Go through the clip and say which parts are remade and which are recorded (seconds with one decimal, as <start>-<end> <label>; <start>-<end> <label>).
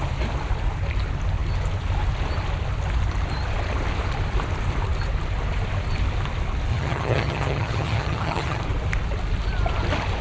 0.0-6.7 recorded; 6.7-8.6 remade; 8.6-10.2 recorded